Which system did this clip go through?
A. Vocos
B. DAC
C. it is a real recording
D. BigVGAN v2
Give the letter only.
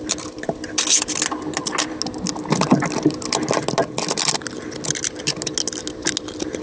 C